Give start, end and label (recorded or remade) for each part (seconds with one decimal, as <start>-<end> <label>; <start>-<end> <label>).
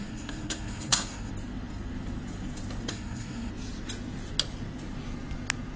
0.0-1.3 remade; 1.3-2.9 recorded; 2.9-3.5 remade; 3.5-5.8 recorded